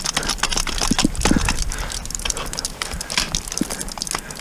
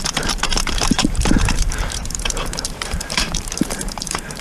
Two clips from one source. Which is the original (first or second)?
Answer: first